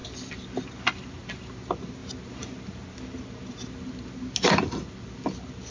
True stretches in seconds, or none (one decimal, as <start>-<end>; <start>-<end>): 0.0-5.7